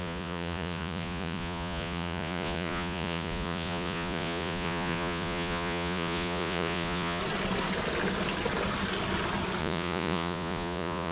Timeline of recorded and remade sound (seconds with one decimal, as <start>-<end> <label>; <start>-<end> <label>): 0.0-7.2 remade; 7.2-9.6 recorded; 9.6-11.1 remade